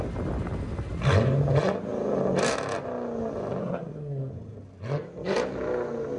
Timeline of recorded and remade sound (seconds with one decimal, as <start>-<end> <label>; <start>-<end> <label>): 0.0-3.6 recorded; 3.6-4.3 remade; 4.3-6.2 recorded